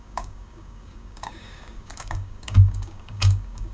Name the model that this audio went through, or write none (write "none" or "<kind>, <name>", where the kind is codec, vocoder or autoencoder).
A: codec, DAC